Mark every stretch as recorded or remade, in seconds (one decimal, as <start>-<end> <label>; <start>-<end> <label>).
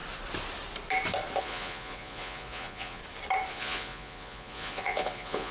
0.0-1.4 recorded; 1.4-3.0 remade; 3.0-3.5 recorded; 3.5-5.5 remade